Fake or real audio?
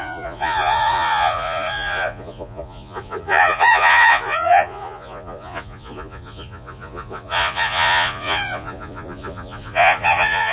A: fake